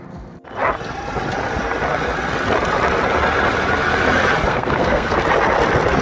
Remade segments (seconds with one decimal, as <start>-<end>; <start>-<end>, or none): 4.5-5.2